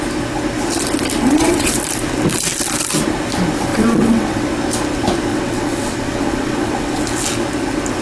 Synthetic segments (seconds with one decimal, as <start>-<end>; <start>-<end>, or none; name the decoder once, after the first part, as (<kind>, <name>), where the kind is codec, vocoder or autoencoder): 1.2-1.8 (vocoder, WaveNeXt); 3.7-4.5; 5.3-7.0